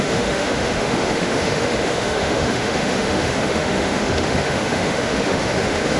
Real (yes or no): no